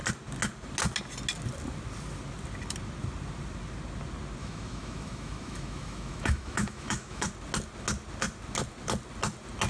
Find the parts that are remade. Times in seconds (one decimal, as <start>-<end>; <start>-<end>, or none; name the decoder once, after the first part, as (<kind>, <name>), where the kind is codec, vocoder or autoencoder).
4.4-7.3 (autoencoder, DAC-VAE)